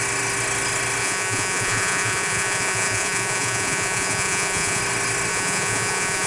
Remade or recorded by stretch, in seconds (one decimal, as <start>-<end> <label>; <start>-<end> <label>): 0.0-1.0 recorded; 1.0-4.8 remade; 4.8-5.3 recorded; 5.3-6.3 remade